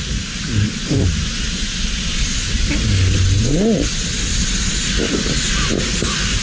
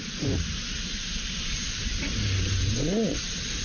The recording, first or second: first